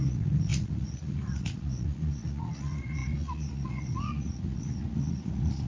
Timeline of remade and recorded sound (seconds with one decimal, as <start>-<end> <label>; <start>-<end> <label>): 0.0-5.7 remade